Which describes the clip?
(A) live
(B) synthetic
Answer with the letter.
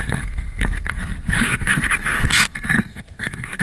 B